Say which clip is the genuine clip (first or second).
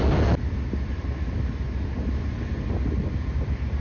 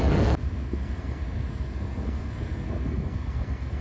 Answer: first